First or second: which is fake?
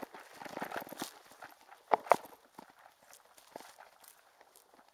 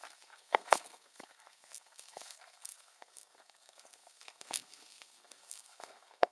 second